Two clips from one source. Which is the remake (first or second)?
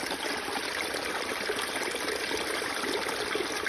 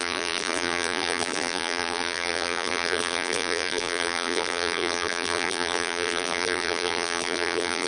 second